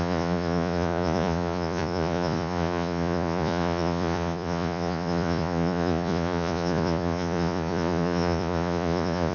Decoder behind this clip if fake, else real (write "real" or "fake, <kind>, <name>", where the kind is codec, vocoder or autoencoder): fake, vocoder, Vocos